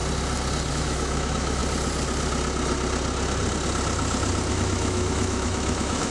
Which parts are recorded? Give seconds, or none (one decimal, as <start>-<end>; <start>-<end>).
0.0-0.7; 1.6-4.5